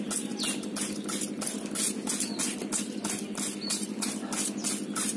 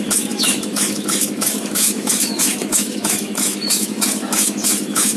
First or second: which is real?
first